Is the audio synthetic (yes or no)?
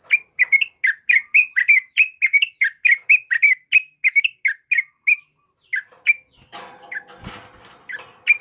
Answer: no